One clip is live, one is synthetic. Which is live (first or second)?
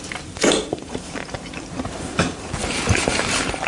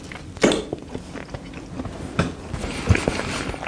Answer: second